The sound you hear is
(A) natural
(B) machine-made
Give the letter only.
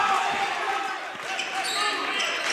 A